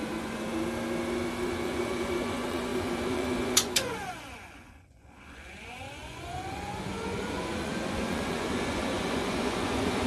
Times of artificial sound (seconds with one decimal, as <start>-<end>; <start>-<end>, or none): 0.0-0.5; 1.4-10.1